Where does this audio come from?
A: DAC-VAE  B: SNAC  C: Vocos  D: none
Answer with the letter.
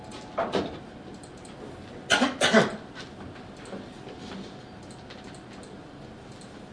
D